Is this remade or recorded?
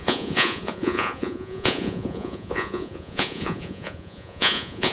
remade